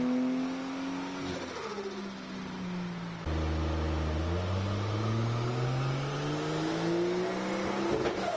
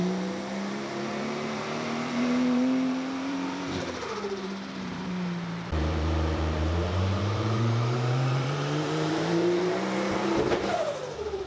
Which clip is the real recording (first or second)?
first